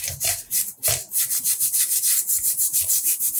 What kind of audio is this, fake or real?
fake